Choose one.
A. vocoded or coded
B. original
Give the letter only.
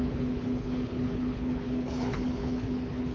A